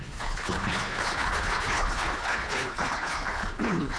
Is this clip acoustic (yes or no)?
no